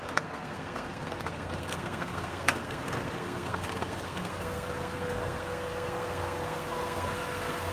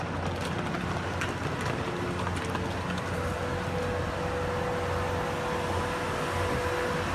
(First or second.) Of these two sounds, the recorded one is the second